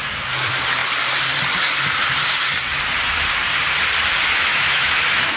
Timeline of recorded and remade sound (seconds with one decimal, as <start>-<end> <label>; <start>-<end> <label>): 0.0-4.5 recorded; 4.5-5.4 remade